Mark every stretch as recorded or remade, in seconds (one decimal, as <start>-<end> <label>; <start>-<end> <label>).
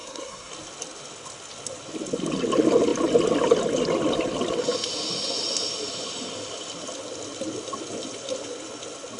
0.0-0.5 remade; 0.5-9.2 recorded